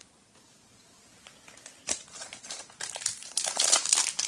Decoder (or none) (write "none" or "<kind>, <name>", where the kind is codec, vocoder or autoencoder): vocoder, BigVGAN v2